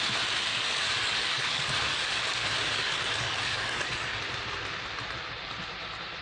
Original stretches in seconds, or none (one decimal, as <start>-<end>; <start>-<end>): 0.0-0.5; 4.2-6.2